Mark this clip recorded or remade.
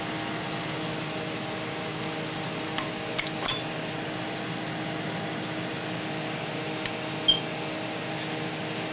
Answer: recorded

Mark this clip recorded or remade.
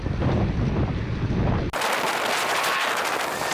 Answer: recorded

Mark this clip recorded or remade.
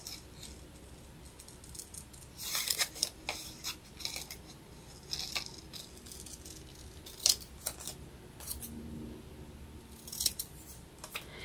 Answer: recorded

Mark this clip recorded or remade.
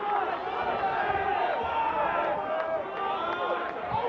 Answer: recorded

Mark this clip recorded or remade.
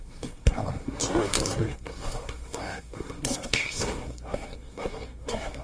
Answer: remade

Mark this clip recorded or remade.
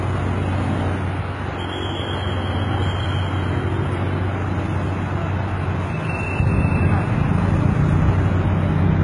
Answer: recorded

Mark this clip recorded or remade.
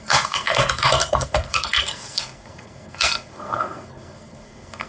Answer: remade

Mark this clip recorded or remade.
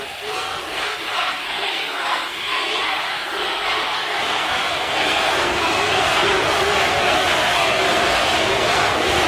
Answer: remade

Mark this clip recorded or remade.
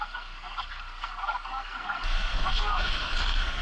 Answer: remade